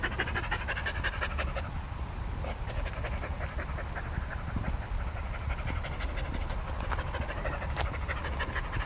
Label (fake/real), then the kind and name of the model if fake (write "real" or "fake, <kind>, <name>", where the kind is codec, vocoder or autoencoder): real